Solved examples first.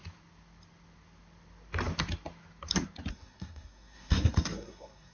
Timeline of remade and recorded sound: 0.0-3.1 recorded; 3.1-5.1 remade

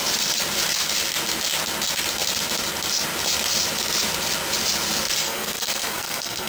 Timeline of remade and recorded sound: 0.0-5.2 recorded; 5.2-6.5 remade

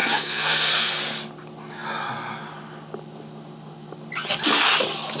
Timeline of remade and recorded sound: 0.0-0.9 remade; 0.9-5.2 recorded